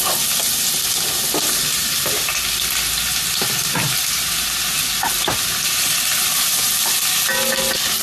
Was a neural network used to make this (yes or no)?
no